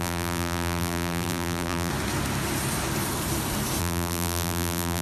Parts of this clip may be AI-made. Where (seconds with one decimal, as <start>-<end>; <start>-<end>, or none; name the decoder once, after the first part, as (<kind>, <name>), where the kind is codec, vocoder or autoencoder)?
0.0-1.9 (vocoder, BigVGAN v2); 3.8-5.0